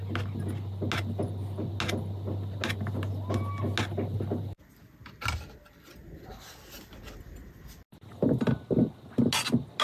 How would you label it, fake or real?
real